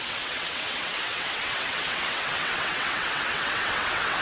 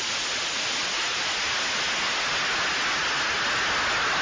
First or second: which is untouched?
second